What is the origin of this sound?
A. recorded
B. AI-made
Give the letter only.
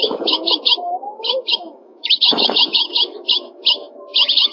B